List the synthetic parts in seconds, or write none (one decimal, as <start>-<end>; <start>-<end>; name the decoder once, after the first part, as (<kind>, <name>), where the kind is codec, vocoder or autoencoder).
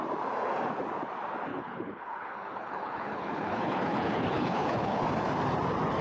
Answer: 1.5-5.0 (codec, HILCodec)